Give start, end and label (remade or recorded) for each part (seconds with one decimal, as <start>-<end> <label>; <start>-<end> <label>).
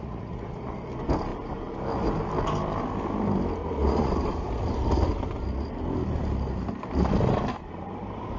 0.0-0.6 remade; 0.6-3.6 recorded; 3.6-4.1 remade; 4.1-8.4 recorded